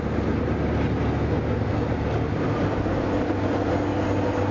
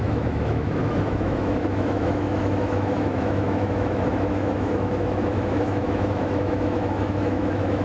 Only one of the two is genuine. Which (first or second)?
first